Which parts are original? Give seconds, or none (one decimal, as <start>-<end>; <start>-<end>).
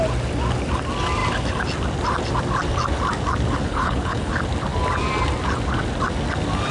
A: 0.0-3.6; 4.3-6.7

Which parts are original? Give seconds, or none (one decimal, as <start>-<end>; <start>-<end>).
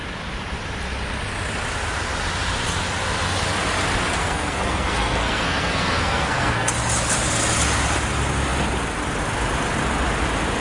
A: 0.0-4.2; 6.7-10.6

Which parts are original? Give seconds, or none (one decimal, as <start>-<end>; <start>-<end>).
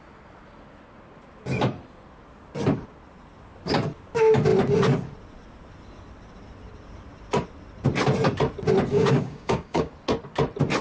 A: 0.0-8.9; 9.9-10.8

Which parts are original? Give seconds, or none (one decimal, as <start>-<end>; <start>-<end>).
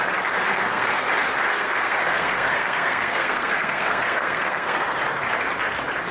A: 0.0-0.5; 1.1-1.5; 5.0-6.1